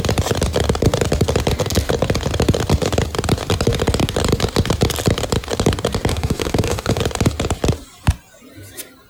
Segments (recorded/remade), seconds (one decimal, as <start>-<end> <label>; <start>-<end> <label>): 0.0-6.1 recorded; 6.1-7.0 remade; 7.0-9.1 recorded